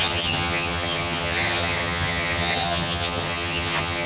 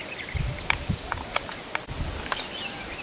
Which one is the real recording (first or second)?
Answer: second